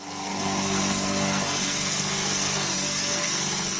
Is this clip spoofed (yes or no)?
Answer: yes